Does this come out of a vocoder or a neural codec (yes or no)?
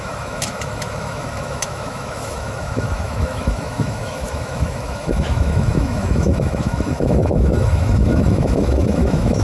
yes